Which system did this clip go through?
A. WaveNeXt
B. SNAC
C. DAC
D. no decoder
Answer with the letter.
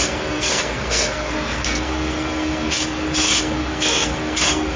B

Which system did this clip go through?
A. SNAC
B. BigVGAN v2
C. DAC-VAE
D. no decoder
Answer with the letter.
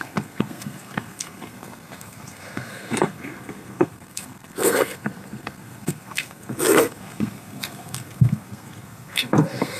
A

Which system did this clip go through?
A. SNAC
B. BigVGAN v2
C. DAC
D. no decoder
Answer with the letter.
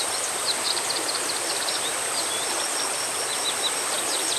D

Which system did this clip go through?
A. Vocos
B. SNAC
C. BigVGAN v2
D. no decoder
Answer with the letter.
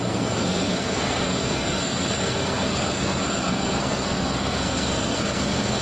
B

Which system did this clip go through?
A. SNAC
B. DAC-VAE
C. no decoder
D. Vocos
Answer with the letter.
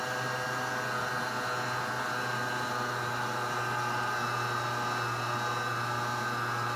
C